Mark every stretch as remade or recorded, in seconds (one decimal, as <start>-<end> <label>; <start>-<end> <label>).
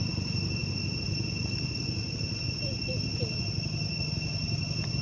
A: 0.0-5.0 recorded